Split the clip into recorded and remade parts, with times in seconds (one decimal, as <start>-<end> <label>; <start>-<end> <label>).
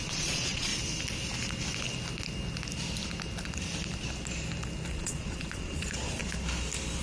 0.0-0.7 remade; 0.7-4.9 recorded; 4.9-6.2 remade; 6.2-7.0 recorded